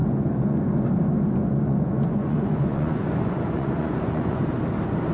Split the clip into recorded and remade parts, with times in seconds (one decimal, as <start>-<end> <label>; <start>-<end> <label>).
0.0-0.6 remade; 0.6-1.4 recorded; 1.4-4.5 remade; 4.5-5.1 recorded